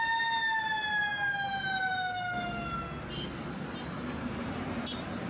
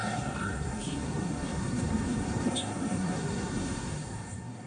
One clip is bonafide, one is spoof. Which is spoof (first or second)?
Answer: second